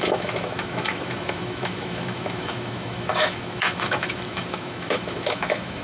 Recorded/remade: remade